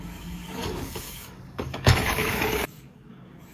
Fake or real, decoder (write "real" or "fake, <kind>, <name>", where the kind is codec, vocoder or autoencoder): fake, codec, DAC